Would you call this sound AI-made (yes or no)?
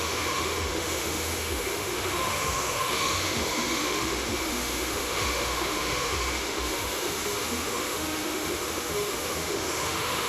yes